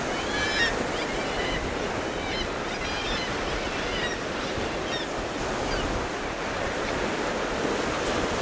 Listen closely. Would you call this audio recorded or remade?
recorded